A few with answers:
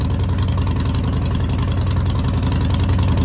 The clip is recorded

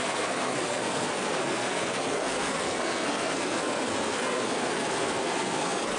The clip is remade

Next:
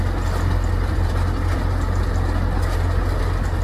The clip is recorded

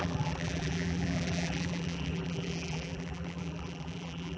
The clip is remade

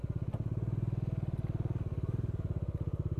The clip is recorded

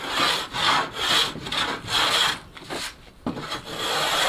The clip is recorded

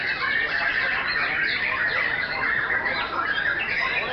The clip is recorded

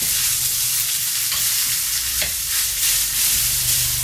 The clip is remade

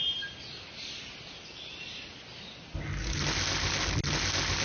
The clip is recorded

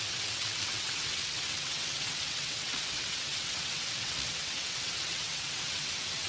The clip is remade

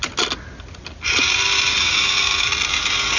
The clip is recorded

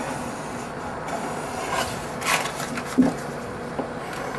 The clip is recorded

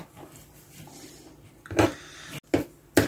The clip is recorded